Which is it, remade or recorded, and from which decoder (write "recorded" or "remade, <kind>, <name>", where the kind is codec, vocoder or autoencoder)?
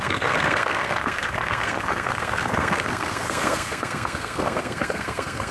remade, codec, SNAC